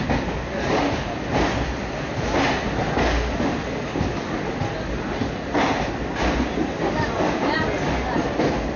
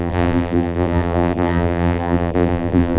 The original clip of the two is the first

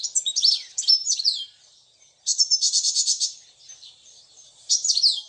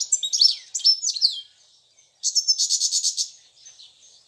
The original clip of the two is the second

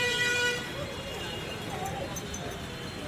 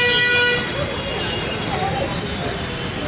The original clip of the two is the second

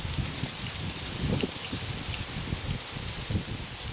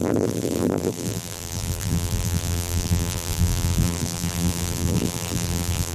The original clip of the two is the first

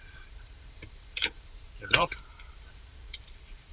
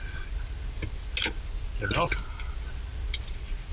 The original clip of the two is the second